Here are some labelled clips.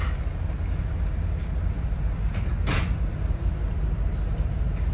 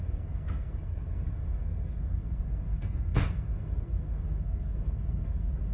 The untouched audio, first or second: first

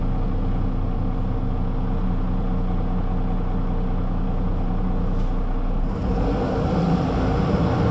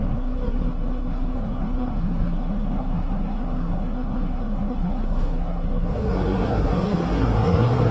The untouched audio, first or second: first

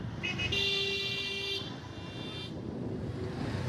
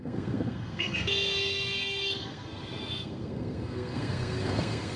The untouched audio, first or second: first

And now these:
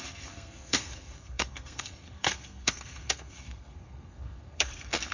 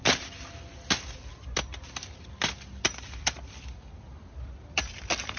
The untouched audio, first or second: second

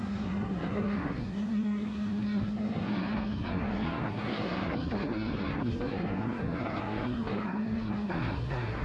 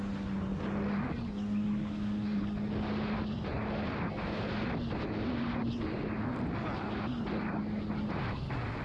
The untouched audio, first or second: second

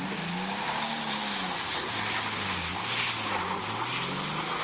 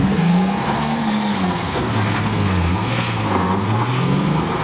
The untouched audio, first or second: first